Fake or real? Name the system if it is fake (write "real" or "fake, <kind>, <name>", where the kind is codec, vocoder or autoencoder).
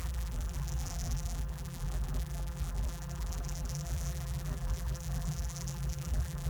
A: fake, vocoder, BigVGAN v2